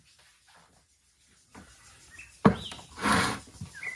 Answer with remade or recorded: recorded